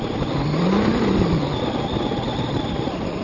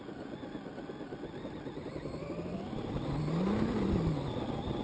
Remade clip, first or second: first